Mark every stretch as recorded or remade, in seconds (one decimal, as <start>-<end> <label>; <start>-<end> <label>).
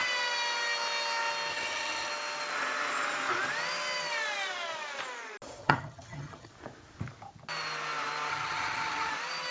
0.0-1.5 recorded; 1.5-2.1 remade; 2.1-5.6 recorded; 5.6-6.5 remade; 6.5-8.3 recorded; 8.3-9.1 remade; 9.1-9.5 recorded